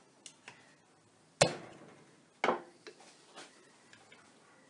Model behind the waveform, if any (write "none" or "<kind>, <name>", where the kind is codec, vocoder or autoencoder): none